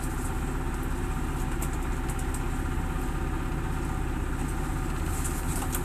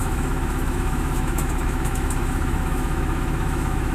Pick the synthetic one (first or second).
second